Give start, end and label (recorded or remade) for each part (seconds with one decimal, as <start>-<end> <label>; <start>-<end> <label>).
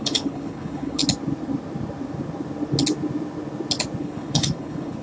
0.0-1.0 remade; 1.0-4.0 recorded; 4.0-5.0 remade